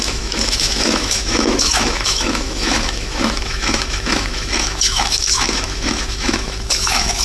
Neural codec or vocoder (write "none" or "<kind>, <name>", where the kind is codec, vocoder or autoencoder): autoencoder, DAC-VAE